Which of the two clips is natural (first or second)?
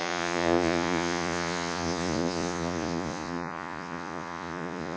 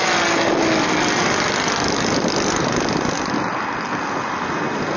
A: second